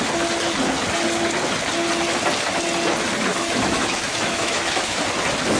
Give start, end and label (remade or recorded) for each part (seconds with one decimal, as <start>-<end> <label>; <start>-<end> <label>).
0.0-3.3 recorded; 3.3-5.0 remade; 5.0-5.6 recorded